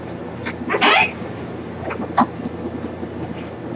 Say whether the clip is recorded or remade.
recorded